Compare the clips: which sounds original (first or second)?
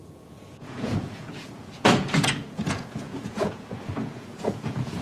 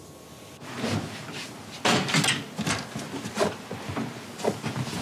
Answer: second